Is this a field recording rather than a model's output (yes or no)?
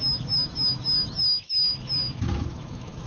no